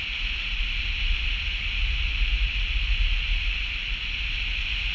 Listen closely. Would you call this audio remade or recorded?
recorded